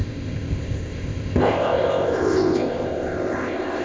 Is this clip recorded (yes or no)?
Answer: no